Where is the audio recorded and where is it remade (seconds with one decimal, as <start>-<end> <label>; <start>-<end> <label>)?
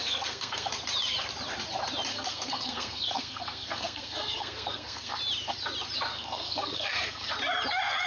0.0-0.7 remade; 0.7-2.1 recorded; 2.1-5.2 remade; 5.2-6.1 recorded; 6.1-7.3 remade; 7.3-8.1 recorded